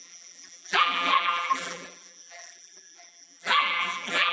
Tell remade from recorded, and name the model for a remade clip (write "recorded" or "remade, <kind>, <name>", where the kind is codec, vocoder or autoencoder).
remade, vocoder, BigVGAN v2